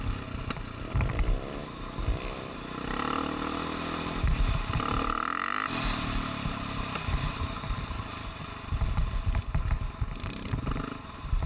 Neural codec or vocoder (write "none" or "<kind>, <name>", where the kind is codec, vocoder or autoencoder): none